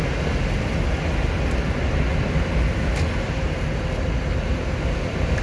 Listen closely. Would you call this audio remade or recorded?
recorded